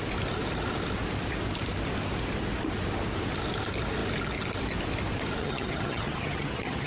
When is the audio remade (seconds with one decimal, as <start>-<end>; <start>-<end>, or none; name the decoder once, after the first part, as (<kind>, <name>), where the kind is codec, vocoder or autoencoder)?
5.4-6.9 (vocoder, HiFi-GAN)